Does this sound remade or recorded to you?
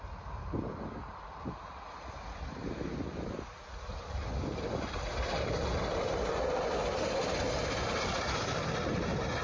recorded